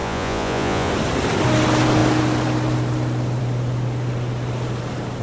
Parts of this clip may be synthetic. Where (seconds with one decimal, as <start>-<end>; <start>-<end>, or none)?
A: 0.0-0.9